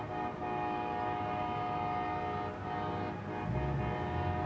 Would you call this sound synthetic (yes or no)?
no